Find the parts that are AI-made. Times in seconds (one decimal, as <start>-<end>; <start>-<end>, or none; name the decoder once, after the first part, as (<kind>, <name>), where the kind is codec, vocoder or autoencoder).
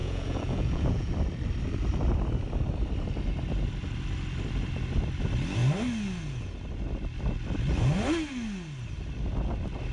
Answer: 0.0-1.1 (vocoder, Vocos)